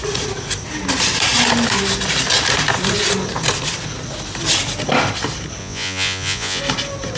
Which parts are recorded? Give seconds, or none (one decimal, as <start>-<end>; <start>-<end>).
0.0-5.6; 6.6-7.2